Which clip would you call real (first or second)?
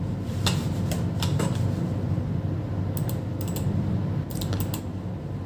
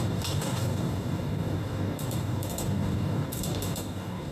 first